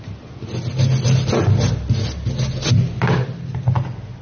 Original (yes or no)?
yes